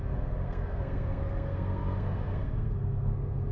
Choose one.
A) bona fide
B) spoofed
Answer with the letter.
B